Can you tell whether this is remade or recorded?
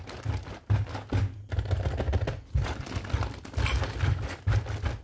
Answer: recorded